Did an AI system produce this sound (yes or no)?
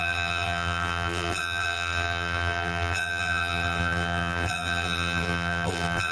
yes